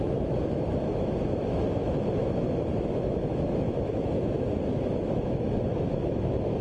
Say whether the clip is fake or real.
fake